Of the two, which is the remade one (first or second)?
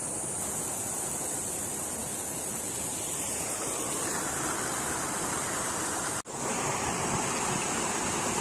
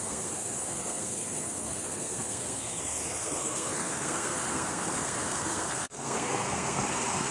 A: second